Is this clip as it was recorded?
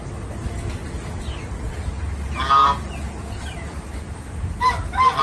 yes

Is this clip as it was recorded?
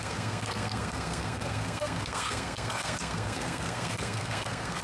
no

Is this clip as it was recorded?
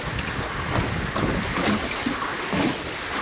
yes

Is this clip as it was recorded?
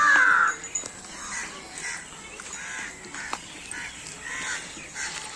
yes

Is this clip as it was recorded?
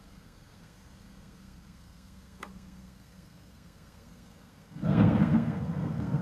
no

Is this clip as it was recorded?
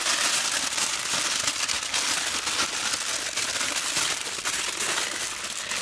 yes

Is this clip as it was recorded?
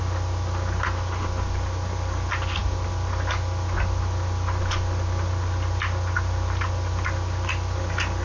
yes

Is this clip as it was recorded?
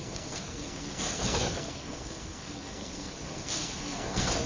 no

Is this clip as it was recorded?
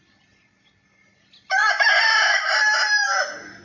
yes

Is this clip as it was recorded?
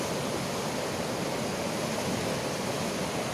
yes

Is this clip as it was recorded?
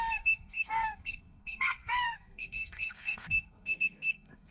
no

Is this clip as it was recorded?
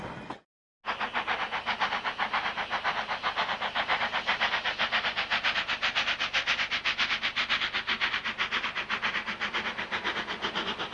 yes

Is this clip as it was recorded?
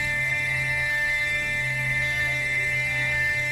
no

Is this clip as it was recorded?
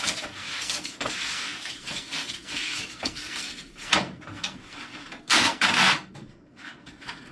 no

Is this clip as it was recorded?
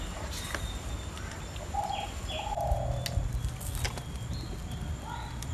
yes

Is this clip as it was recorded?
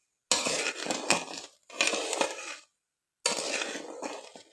yes